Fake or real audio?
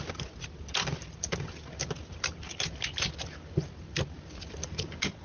real